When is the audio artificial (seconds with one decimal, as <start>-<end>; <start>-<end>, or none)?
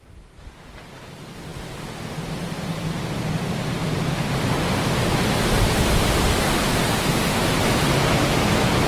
3.8-6.4